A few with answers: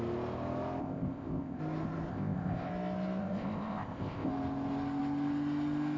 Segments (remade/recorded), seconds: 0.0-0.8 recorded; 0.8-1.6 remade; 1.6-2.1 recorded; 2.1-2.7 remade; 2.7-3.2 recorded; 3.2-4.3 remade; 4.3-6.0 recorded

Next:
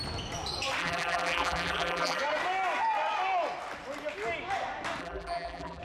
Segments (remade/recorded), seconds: 0.0-0.8 recorded; 0.8-2.2 remade; 2.2-5.0 recorded; 5.0-5.8 remade